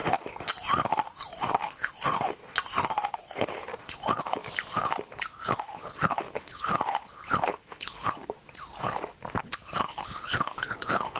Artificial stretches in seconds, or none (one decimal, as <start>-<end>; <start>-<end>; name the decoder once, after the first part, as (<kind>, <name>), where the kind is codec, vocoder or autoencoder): 1.5-2.4 (codec, HILCodec); 3.1-3.7; 5.6-8.2; 9.4-11.2